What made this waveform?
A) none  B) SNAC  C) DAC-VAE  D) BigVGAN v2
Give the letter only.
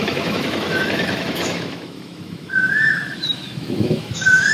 C